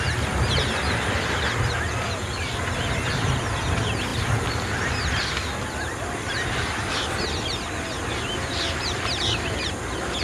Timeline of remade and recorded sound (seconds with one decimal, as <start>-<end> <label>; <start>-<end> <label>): 0.0-10.2 recorded